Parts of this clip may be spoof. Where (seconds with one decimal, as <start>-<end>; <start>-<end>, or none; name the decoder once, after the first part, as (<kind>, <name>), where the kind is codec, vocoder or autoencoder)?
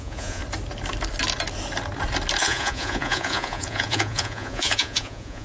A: 0.0-0.4 (vocoder, Vocos); 2.4-5.4